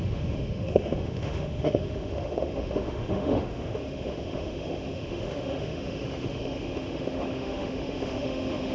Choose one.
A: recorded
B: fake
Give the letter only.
B